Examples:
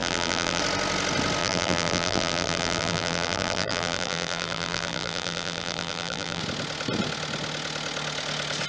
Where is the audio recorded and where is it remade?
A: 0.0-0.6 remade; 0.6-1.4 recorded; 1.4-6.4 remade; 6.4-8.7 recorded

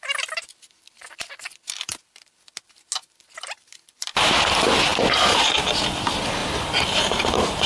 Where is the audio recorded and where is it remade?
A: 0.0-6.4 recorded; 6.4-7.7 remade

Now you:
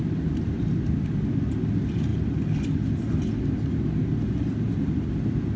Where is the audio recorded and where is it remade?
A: 0.0-5.6 recorded

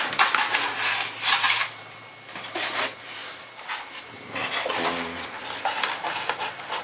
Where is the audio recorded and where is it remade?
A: 0.0-6.8 recorded

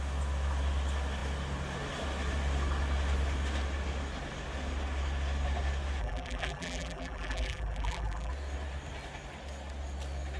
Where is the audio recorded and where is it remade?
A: 0.0-6.0 recorded; 6.0-8.3 remade; 8.3-10.4 recorded